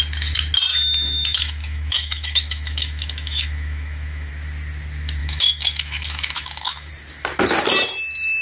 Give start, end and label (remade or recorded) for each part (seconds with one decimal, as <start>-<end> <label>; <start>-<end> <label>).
0.0-0.7 recorded; 0.7-4.3 remade; 4.3-5.2 recorded; 5.2-6.9 remade; 6.9-8.4 recorded